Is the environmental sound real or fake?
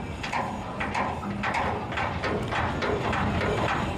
real